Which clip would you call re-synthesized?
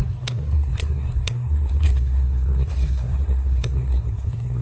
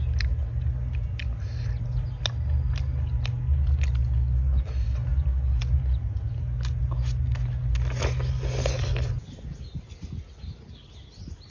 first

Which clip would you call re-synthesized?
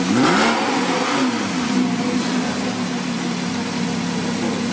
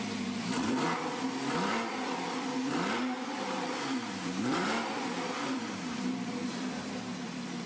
second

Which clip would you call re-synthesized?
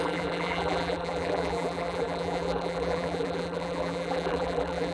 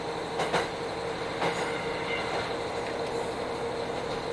first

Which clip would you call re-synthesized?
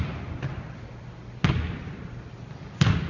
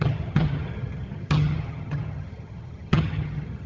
second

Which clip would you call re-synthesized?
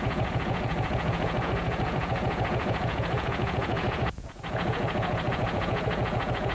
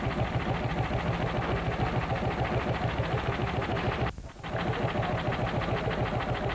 first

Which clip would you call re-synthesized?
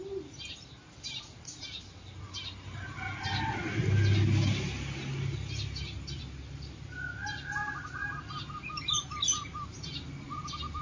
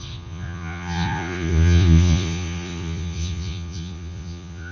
second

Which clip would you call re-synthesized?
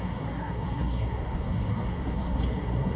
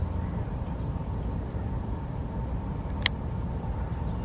first